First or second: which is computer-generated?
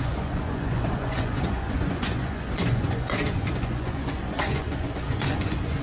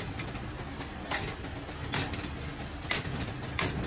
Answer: first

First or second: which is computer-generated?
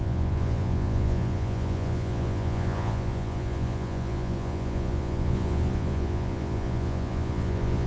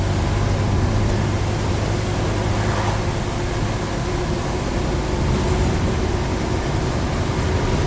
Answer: first